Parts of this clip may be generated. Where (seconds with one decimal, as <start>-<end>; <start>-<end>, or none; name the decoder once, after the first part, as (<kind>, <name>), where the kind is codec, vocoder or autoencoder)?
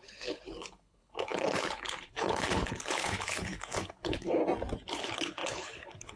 0.0-4.4 (codec, HILCodec); 4.9-6.2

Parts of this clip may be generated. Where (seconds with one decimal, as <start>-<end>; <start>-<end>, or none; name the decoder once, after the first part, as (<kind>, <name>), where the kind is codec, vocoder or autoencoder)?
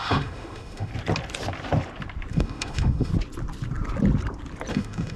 0.0-0.9 (autoencoder, DAC-VAE); 2.3-3.1; 4.7-5.2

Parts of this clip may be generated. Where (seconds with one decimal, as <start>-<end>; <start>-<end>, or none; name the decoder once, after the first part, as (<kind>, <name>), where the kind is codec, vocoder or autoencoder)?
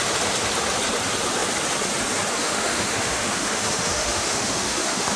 2.4-5.2 (autoencoder, DAC-VAE)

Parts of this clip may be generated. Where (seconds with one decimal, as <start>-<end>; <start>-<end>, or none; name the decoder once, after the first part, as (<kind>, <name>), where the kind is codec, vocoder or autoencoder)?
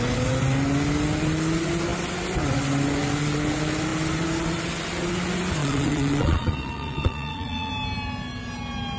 5.6-7.7 (vocoder, Vocos)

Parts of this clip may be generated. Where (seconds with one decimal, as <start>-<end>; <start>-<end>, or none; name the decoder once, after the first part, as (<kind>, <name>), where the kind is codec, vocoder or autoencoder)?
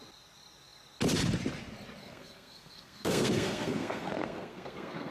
2.0-5.1 (codec, SNAC)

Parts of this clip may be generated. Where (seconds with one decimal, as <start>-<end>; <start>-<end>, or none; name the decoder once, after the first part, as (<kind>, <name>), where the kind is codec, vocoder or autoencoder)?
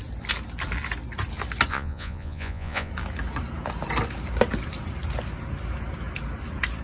1.7-2.9 (vocoder, Vocos)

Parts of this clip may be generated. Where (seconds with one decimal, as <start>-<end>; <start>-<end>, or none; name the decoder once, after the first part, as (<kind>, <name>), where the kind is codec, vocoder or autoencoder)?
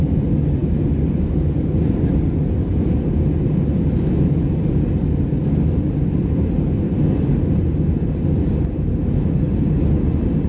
none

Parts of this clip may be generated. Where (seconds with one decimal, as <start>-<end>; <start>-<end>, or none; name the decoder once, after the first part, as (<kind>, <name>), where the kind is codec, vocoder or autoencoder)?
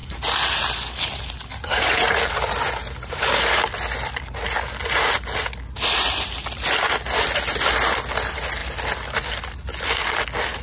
1.5-2.3 (vocoder, Vocos)